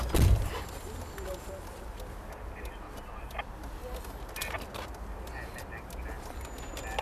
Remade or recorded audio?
recorded